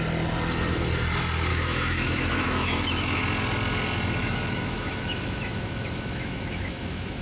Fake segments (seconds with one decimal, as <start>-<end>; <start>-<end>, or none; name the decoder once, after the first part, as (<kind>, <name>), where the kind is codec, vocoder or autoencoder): 1.5-3.2 (autoencoder, DAC-VAE); 4.2-7.2